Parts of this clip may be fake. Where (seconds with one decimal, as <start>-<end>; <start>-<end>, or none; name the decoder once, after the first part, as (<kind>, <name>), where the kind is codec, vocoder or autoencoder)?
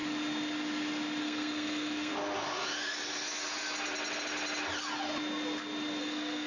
1.2-2.1 (codec, SNAC); 6.0-6.5